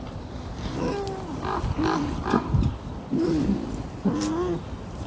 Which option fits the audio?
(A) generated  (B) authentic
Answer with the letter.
B